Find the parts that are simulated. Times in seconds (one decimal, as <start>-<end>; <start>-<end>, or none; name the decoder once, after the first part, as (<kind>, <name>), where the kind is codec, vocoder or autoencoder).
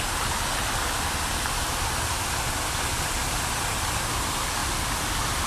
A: none